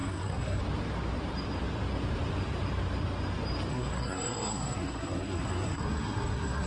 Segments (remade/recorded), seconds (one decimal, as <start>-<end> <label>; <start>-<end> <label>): 0.0-0.6 remade; 0.6-3.7 recorded; 3.7-6.7 remade